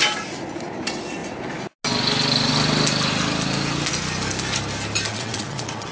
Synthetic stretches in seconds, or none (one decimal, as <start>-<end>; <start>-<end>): 5.1-5.9